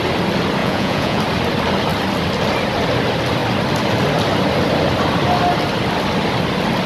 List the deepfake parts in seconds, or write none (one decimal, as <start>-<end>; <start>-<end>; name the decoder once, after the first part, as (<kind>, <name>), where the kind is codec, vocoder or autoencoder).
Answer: 0.6-1.2 (vocoder, Vocos)